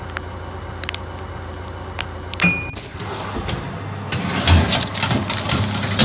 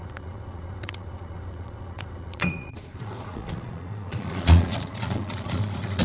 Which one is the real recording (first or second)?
first